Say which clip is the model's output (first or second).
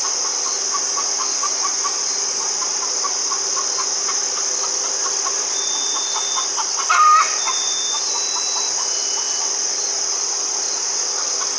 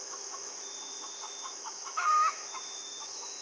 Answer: second